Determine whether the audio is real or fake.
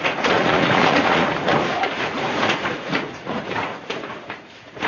fake